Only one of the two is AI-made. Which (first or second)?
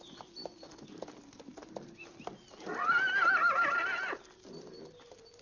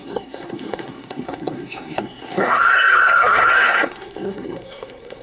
second